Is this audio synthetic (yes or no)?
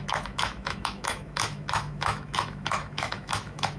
yes